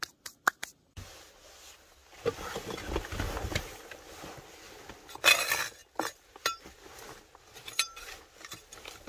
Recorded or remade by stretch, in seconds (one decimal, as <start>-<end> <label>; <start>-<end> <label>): 0.0-9.1 recorded